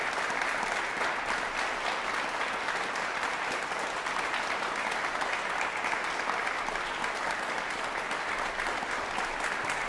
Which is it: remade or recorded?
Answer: recorded